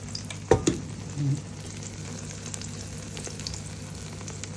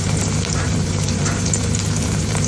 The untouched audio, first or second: first